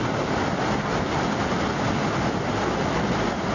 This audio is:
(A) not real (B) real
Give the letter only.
B